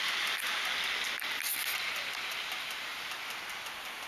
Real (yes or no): yes